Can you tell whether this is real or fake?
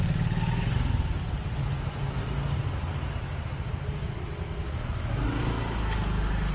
real